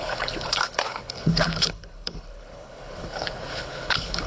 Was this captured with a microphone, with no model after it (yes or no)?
no